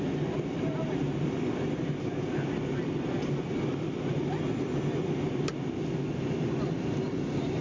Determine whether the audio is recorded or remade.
recorded